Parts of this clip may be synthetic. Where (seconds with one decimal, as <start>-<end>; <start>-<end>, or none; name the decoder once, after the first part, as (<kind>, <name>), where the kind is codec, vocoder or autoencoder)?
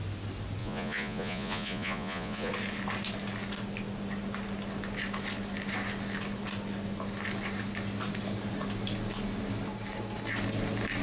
0.6-2.5 (vocoder, Vocos)